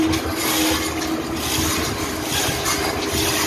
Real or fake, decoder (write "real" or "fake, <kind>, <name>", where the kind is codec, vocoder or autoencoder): real